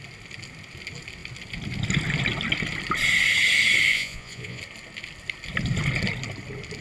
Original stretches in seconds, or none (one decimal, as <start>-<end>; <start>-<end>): 0.0-3.9; 4.6-6.8